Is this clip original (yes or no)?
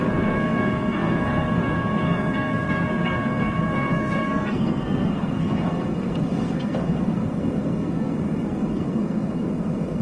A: no